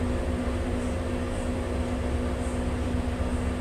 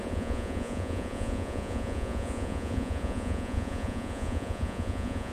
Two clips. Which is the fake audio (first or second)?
second